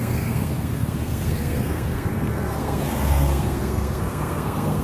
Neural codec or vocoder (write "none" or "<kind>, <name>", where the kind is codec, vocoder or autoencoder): codec, SNAC